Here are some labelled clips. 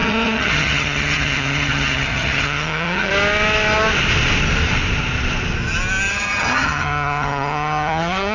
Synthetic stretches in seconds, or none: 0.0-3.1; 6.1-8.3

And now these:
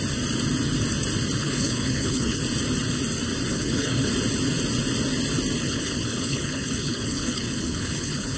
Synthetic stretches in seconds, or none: 1.4-2.4; 3.5-4.1; 5.6-8.4

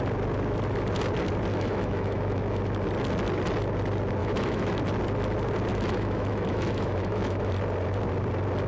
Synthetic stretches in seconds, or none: 1.5-2.6; 4.2-4.8; 5.7-7.5

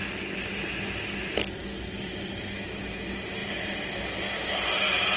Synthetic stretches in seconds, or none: 3.4-4.0

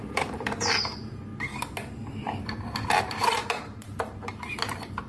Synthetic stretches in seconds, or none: 0.0-1.3; 2.4-5.1